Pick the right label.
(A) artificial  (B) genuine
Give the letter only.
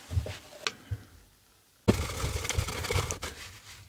B